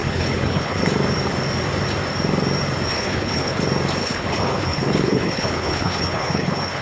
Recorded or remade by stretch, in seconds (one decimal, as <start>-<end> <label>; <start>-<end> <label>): 0.0-0.8 remade; 0.8-2.9 recorded; 2.9-3.6 remade; 3.6-4.0 recorded; 4.0-6.8 remade